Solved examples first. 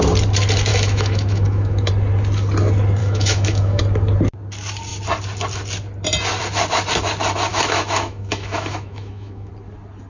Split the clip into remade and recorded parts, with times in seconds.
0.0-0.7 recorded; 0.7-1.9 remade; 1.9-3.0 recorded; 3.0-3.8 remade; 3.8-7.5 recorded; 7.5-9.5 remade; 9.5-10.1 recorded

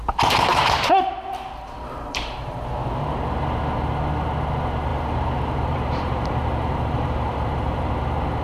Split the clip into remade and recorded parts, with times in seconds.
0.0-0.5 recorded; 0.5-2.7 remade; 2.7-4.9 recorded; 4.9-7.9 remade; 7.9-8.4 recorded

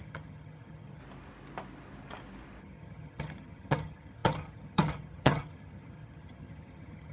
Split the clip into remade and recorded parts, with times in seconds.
0.0-1.0 remade; 1.0-2.6 recorded; 2.6-7.1 remade